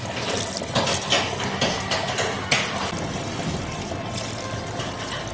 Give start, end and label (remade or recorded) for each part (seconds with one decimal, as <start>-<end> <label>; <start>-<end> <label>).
0.0-5.3 recorded